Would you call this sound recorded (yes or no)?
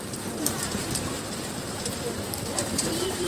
no